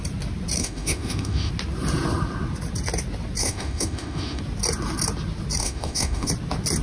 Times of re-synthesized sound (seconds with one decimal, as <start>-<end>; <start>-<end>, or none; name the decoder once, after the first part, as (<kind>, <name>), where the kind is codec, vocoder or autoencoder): 0.6-1.5 (autoencoder, DAC-VAE); 3.4-4.4; 5.6-6.3